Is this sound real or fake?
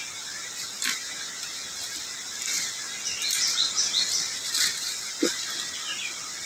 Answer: real